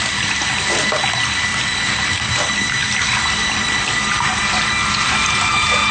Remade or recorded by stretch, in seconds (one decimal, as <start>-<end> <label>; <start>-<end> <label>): 0.0-5.9 recorded